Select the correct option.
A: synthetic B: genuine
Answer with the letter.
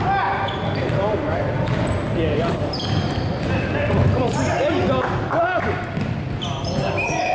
B